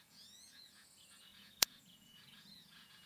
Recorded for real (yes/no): no